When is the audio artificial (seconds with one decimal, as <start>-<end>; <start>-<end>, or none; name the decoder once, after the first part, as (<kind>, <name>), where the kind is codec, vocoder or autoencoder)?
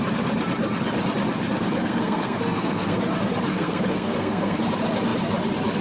1.8-3.0 (codec, SNAC); 3.5-4.6